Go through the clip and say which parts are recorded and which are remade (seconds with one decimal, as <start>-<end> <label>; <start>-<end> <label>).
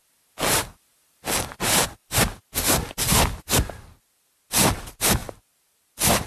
0.0-6.3 recorded